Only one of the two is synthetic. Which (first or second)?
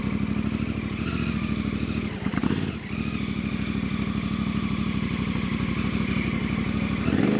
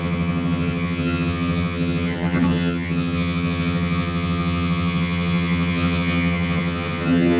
second